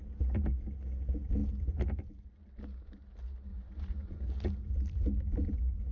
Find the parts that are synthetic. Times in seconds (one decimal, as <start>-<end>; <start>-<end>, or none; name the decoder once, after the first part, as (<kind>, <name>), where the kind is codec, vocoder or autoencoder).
3.5-4.2 (vocoder, Vocos)